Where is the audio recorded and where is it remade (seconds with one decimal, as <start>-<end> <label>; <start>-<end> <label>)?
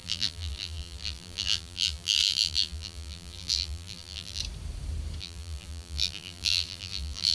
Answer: 0.0-4.4 remade; 4.4-5.2 recorded; 5.2-7.3 remade